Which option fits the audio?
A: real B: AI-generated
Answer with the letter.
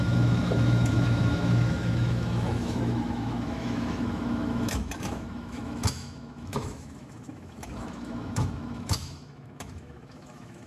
B